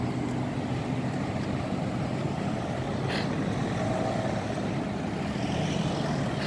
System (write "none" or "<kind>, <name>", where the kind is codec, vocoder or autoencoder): none